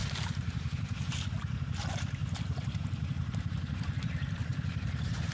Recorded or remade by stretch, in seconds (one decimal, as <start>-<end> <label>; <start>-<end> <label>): 0.0-1.8 remade; 1.8-2.2 recorded; 2.2-3.9 remade; 3.9-4.5 recorded; 4.5-5.3 remade